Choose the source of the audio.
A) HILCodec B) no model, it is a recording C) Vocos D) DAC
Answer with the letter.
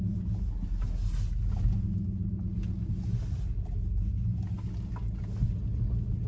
B